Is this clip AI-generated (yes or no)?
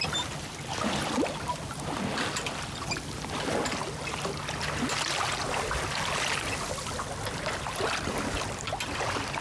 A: no